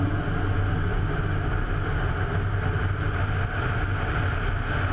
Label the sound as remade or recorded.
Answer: recorded